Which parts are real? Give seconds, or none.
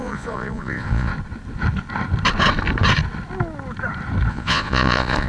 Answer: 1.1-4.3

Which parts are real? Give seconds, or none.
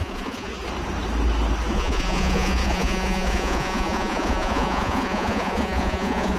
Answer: 0.5-1.7